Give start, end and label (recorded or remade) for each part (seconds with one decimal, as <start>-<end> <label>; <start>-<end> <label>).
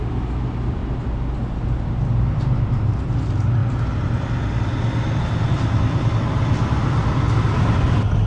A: 0.0-8.3 recorded